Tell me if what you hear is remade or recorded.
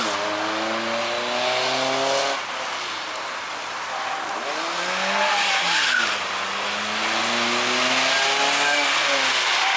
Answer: recorded